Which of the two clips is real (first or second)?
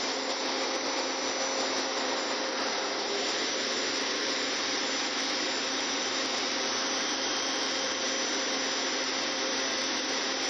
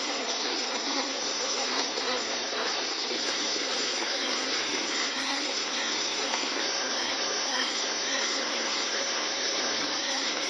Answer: first